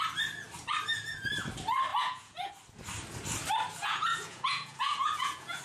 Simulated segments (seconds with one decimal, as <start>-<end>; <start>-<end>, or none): 1.9-2.5; 3.8-5.6